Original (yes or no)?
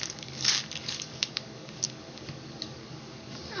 no